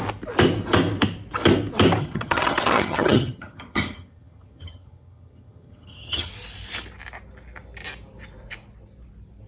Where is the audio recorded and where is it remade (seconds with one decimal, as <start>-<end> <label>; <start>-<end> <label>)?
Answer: 0.0-2.0 recorded; 2.0-6.3 remade; 6.3-9.5 recorded